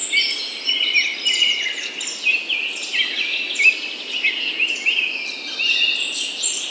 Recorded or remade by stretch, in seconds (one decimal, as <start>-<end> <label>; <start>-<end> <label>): 0.0-6.7 recorded